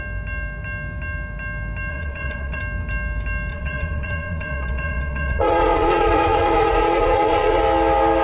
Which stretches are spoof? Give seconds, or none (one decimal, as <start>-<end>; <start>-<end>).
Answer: 1.9-2.6; 3.5-7.6